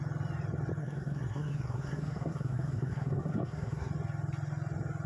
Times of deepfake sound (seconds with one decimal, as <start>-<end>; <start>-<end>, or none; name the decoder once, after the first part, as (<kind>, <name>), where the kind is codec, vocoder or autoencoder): 0.8-3.9 (codec, SNAC)